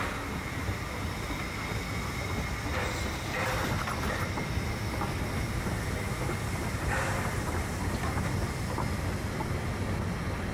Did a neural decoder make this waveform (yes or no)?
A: no